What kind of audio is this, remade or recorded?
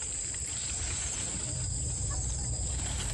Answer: remade